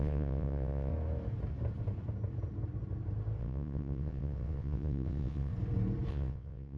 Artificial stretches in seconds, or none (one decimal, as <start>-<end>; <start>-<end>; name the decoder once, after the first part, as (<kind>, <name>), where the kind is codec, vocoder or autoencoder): 0.0-0.9 (vocoder, WaveNeXt); 3.4-5.5; 6.1-6.8